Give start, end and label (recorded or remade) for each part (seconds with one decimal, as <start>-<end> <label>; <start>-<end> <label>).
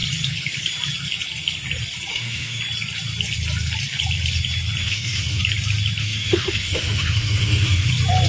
0.0-2.1 recorded; 2.1-2.6 remade; 2.6-4.8 recorded; 4.8-5.4 remade; 5.4-6.0 recorded; 6.0-7.9 remade; 7.9-8.3 recorded